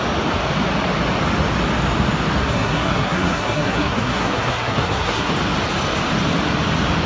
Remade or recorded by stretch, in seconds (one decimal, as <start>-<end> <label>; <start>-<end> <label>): 0.0-2.4 recorded; 2.4-5.3 remade; 5.3-7.1 recorded